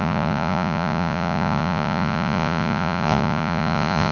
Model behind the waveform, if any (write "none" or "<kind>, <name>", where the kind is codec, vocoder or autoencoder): vocoder, Vocos